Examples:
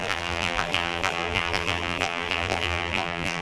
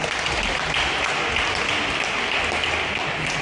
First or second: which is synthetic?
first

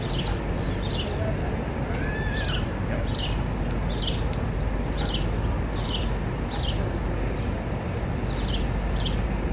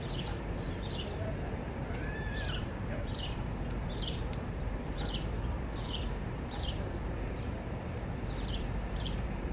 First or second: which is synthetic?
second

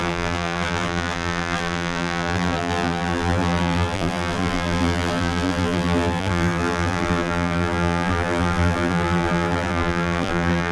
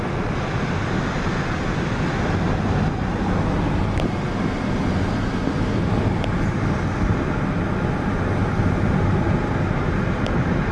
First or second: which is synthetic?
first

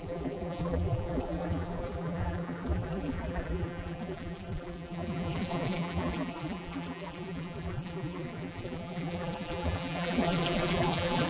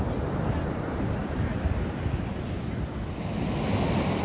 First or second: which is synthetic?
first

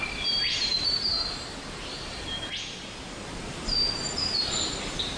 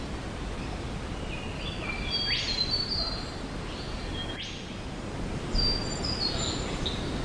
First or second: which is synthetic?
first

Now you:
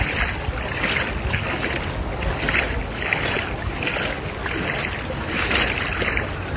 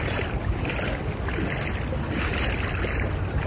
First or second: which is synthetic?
second